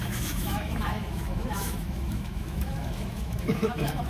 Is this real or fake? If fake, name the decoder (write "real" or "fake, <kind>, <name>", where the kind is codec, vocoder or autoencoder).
fake, autoencoder, DAC-VAE